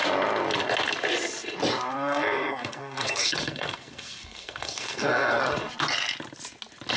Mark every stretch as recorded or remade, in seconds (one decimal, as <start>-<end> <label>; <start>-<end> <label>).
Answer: 0.0-1.9 recorded; 1.9-5.4 remade; 5.4-7.0 recorded